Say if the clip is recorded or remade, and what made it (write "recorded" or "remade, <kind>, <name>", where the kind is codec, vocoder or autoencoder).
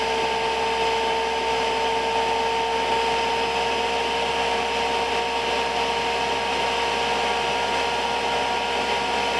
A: recorded